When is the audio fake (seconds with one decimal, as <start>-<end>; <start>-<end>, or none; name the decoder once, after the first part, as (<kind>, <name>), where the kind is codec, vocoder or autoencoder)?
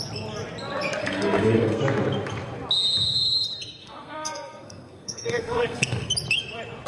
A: 1.0-1.8 (codec, SNAC); 3.8-6.1